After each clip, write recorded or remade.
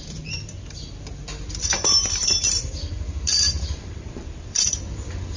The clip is remade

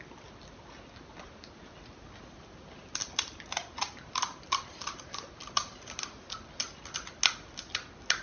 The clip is recorded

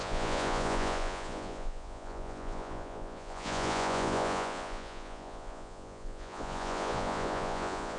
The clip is remade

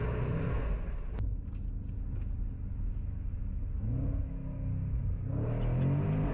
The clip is recorded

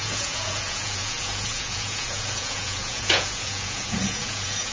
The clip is remade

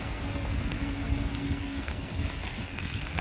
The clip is remade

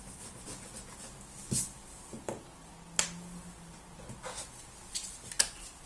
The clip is recorded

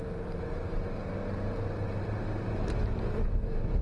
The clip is remade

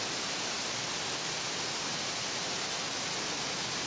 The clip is recorded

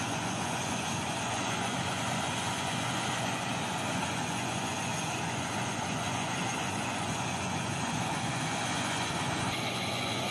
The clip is remade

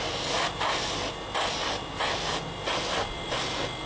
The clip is recorded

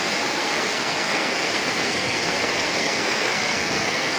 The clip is remade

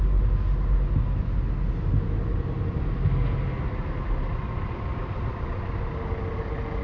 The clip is recorded